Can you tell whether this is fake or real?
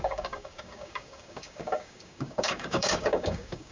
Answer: fake